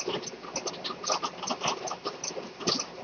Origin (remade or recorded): recorded